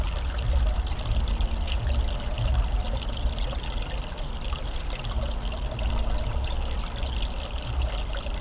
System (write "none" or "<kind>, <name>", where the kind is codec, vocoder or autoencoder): none